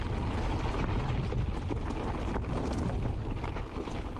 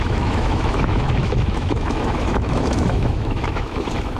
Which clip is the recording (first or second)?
first